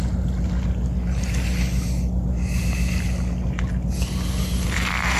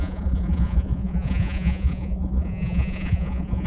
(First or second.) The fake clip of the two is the second